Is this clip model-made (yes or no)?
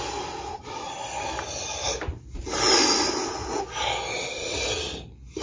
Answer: no